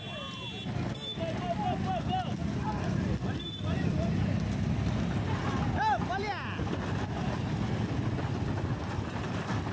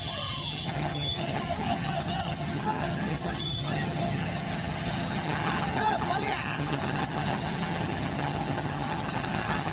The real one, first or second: first